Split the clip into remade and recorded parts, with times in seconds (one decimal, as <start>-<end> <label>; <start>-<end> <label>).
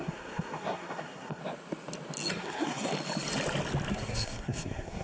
0.0-1.4 remade; 1.4-2.3 recorded; 2.3-2.9 remade; 2.9-3.9 recorded; 3.9-5.0 remade